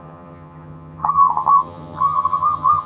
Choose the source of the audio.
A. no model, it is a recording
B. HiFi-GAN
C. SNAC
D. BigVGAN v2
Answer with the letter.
B